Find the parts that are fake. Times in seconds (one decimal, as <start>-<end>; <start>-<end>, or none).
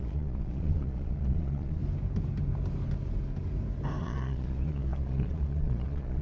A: 0.0-1.8; 4.0-6.2